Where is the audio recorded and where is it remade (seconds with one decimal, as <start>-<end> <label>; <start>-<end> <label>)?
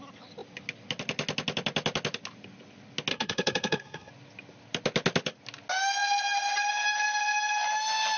0.0-3.1 recorded; 3.1-4.1 remade; 4.1-8.2 recorded